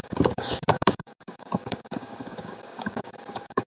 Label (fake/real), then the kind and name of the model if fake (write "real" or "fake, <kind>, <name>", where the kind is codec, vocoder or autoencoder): fake, codec, DAC